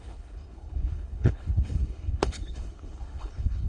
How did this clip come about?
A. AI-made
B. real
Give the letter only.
A